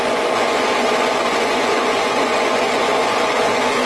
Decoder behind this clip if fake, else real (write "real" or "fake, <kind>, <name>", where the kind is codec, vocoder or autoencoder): fake, vocoder, Vocos